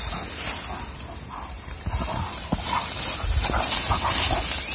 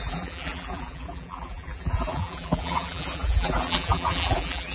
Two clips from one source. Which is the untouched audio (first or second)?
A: first